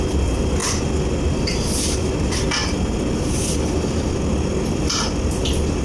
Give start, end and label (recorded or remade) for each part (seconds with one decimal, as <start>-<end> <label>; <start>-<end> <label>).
0.0-5.8 recorded